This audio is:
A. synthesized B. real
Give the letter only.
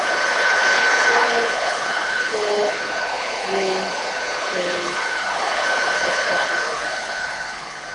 A